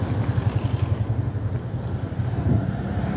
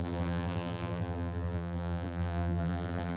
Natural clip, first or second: first